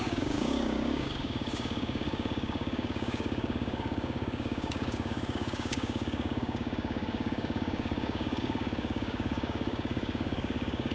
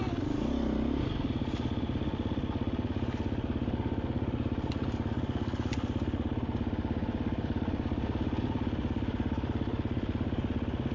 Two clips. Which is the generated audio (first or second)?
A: first